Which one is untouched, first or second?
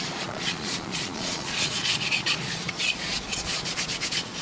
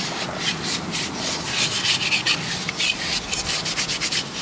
second